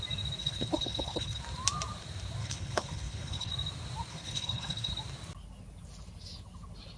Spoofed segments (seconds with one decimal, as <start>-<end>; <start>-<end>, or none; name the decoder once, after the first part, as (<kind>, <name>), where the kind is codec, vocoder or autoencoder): 0.4-1.4 (codec, HILCodec); 2.4-3.5; 4.1-4.9